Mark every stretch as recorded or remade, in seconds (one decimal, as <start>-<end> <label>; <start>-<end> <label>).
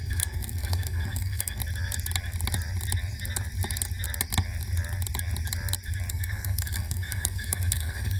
0.0-1.6 remade; 1.6-6.1 recorded; 6.1-8.2 remade